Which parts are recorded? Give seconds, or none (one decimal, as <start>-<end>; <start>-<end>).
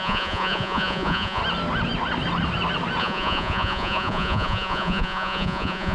1.4-3.0